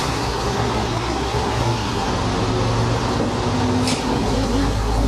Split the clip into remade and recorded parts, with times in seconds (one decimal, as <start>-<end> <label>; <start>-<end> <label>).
0.0-2.1 remade; 2.1-4.0 recorded; 4.0-5.1 remade